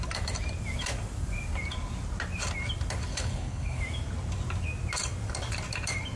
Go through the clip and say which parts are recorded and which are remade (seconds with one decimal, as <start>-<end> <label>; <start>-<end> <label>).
0.0-3.1 recorded; 3.1-3.8 remade; 3.8-6.2 recorded

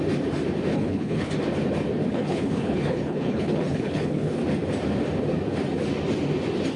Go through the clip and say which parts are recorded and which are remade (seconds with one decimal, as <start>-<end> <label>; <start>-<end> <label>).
0.0-0.7 recorded; 0.7-1.3 remade; 1.3-2.1 recorded; 2.1-4.4 remade; 4.4-6.8 recorded

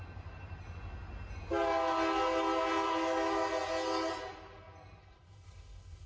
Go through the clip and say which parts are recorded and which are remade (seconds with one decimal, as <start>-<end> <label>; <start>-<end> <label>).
0.0-5.0 recorded; 5.0-6.1 remade

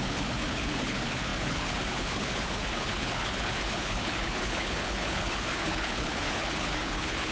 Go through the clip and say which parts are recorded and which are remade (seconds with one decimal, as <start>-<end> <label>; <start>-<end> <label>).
0.0-7.3 remade